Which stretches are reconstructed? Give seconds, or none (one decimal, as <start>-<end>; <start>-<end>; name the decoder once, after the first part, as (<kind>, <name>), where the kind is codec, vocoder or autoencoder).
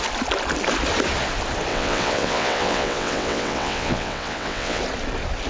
1.7-4.8 (vocoder, WaveNeXt)